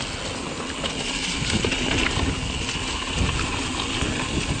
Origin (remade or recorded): recorded